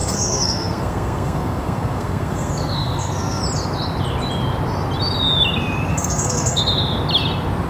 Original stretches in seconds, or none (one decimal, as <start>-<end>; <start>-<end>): 3.4-5.9; 6.6-7.7